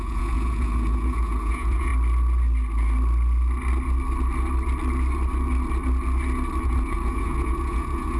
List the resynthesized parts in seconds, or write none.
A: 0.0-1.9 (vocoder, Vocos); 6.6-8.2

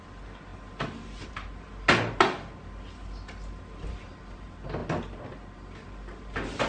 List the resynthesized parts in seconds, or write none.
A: none

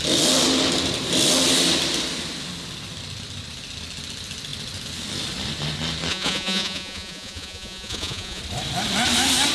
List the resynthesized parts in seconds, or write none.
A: 6.1-8.4 (vocoder, Vocos)

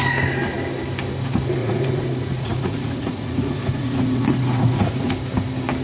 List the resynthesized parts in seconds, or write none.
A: 1.6-5.1 (vocoder, Vocos)